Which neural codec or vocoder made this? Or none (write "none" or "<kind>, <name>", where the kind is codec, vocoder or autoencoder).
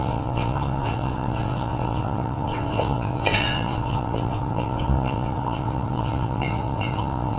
vocoder, WaveNeXt